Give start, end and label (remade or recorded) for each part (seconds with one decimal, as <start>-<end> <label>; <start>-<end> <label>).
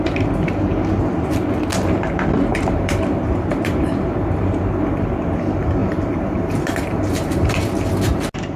0.0-2.5 recorded; 2.5-4.6 remade; 4.6-5.8 recorded; 5.8-7.7 remade; 7.7-8.6 recorded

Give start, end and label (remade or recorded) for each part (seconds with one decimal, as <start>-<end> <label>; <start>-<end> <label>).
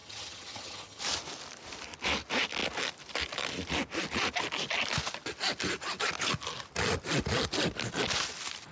0.0-1.0 remade; 1.0-8.7 recorded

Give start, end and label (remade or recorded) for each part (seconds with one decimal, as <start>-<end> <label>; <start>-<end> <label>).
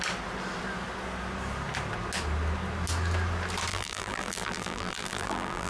0.0-3.7 recorded; 3.7-5.7 remade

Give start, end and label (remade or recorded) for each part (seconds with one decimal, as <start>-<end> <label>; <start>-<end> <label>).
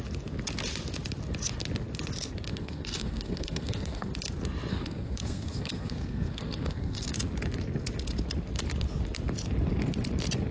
0.0-2.5 recorded; 2.5-4.1 remade; 4.1-4.7 recorded; 4.7-7.1 remade; 7.1-10.5 recorded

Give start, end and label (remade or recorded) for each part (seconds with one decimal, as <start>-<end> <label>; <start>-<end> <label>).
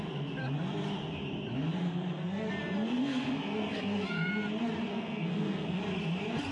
0.0-1.8 recorded; 1.8-2.5 remade; 2.5-3.0 recorded; 3.0-4.3 remade; 4.3-4.9 recorded; 4.9-5.8 remade; 5.8-6.5 recorded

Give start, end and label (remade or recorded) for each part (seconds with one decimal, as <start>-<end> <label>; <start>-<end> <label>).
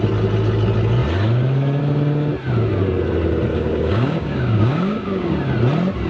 0.0-3.5 recorded; 3.5-5.3 remade; 5.3-6.1 recorded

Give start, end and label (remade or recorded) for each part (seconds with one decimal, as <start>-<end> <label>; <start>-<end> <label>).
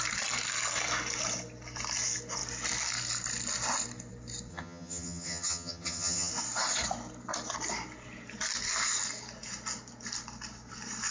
0.0-4.5 recorded; 4.5-6.3 remade; 6.3-11.1 recorded